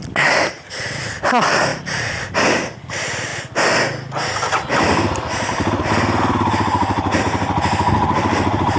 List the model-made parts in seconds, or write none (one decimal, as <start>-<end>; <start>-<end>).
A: 1.7-2.2